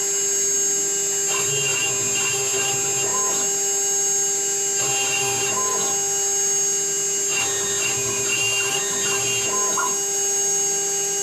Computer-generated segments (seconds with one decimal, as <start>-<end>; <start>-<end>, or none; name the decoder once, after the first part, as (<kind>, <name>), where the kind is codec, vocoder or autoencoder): none